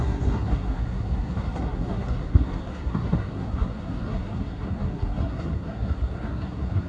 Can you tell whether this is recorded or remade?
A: remade